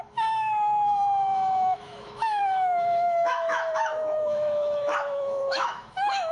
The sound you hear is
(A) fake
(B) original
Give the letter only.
A